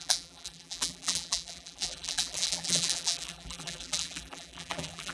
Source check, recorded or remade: remade